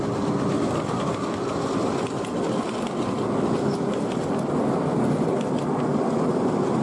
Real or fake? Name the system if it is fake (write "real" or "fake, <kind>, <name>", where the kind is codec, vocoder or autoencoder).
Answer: real